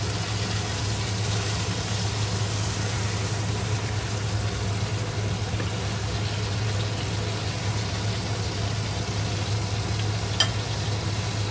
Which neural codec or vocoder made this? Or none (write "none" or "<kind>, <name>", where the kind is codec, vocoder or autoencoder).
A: none